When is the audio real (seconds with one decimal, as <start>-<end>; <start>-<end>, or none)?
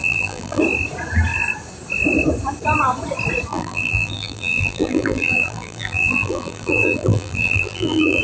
0.6-3.5